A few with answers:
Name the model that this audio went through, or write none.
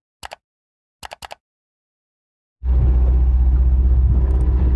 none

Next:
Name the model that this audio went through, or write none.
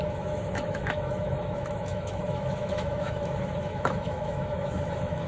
autoencoder, DAC-VAE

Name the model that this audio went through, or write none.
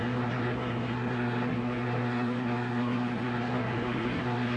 codec, SNAC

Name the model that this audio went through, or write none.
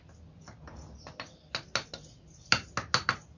none